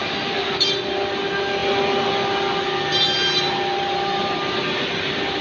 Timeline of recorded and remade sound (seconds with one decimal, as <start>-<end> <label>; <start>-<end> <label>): 0.0-5.4 recorded